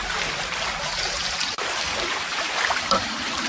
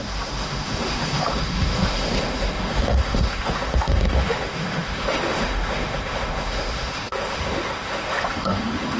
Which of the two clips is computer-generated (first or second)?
second